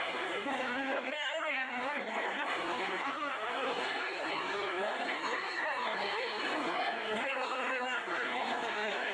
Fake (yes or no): yes